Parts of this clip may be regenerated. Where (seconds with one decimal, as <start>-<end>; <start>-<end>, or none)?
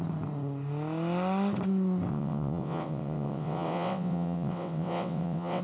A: 2.1-5.6